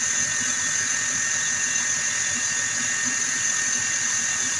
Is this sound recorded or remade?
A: recorded